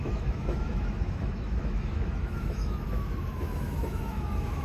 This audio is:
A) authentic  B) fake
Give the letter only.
B